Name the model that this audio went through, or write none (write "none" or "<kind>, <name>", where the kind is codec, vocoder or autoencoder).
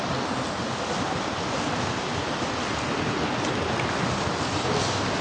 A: none